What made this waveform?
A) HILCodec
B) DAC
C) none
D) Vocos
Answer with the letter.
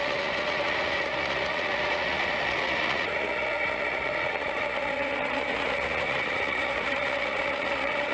D